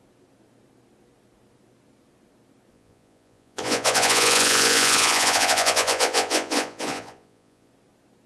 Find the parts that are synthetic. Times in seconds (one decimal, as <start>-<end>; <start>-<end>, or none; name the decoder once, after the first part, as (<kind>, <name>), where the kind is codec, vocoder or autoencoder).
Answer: 2.7-7.7 (vocoder, Vocos)